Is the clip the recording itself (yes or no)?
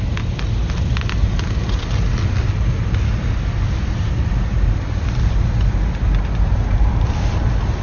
yes